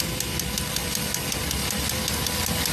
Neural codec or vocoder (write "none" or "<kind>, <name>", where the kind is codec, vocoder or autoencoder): none